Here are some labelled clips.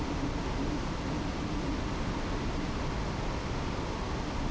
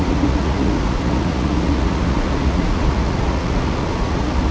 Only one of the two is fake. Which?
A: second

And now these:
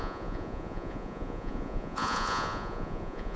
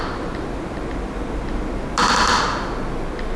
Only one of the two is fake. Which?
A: first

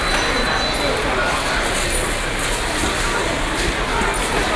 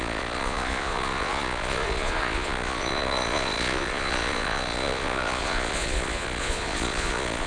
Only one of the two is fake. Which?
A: second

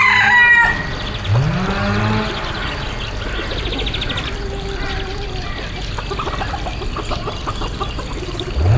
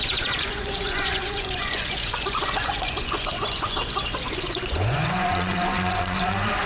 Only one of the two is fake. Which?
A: second